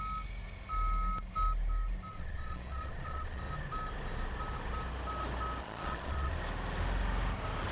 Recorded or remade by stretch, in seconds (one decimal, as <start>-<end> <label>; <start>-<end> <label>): 0.0-2.1 recorded; 2.1-3.4 remade; 3.4-5.6 recorded; 5.6-6.3 remade; 6.3-7.7 recorded